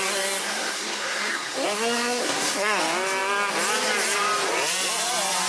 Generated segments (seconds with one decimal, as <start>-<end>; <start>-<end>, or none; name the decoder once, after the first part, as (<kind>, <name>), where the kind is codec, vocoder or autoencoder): 0.4-2.8 (codec, SNAC)